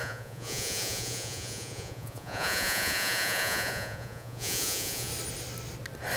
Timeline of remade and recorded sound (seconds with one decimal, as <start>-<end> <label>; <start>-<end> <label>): 0.0-5.1 remade; 5.1-6.2 recorded